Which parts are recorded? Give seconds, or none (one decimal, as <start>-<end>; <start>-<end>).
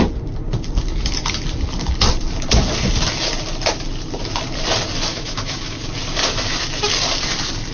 0.0-5.1; 5.8-7.7